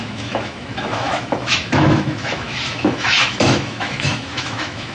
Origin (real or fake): fake